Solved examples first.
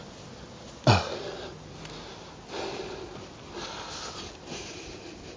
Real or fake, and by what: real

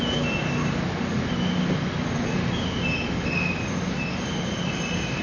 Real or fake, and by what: real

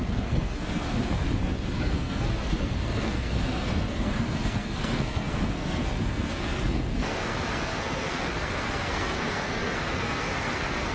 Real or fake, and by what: fake, codec, SNAC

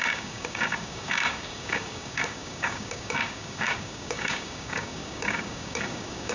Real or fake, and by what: fake, codec, DAC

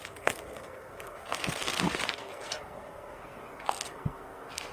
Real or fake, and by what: fake, codec, SNAC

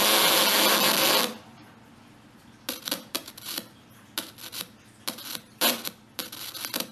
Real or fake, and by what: real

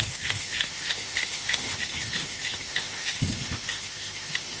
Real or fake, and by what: fake, autoencoder, DAC-VAE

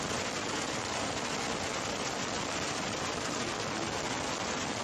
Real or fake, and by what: real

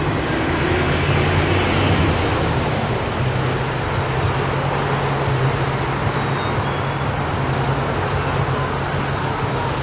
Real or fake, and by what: real